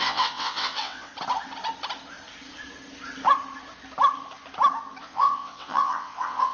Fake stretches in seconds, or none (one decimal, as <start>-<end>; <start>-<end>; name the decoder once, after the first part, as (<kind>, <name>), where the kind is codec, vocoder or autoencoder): 0.0-1.1 (vocoder, WaveNeXt); 5.0-6.5